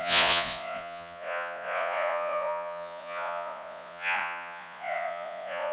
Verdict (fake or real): fake